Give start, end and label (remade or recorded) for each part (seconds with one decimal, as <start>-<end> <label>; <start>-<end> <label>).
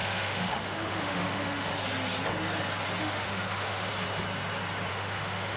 0.0-1.7 remade; 1.7-3.0 recorded; 3.0-3.9 remade; 3.9-4.9 recorded; 4.9-5.6 remade